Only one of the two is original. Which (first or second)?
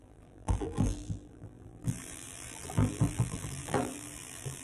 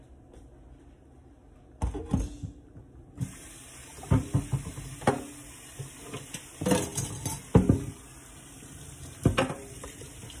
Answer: second